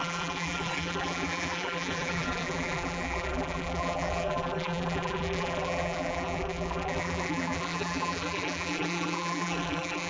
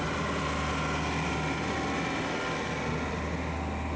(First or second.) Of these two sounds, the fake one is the first